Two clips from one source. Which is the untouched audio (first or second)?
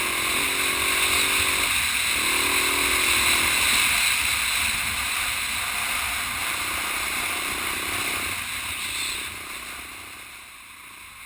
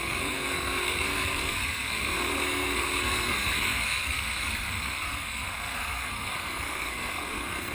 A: first